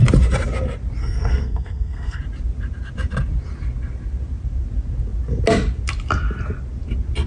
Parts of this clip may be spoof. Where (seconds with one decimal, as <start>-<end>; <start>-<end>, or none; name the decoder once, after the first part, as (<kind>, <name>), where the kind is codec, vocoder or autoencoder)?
1.0-2.2 (codec, SNAC)